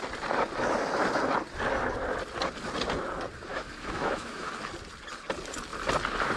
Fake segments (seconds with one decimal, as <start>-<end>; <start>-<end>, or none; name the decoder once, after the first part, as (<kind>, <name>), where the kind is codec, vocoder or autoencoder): 3.5-4.5 (autoencoder, DAC-VAE)